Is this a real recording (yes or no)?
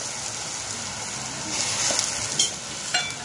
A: yes